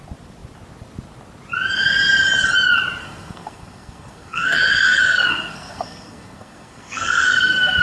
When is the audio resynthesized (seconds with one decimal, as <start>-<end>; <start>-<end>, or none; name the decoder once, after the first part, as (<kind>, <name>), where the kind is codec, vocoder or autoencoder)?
3.0-7.8 (codec, SNAC)